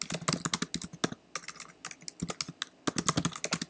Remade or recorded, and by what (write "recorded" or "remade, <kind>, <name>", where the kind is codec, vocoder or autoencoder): recorded